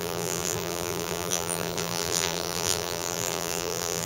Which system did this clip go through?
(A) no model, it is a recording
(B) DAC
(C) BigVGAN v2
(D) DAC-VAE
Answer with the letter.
C